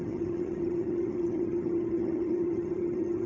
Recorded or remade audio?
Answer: remade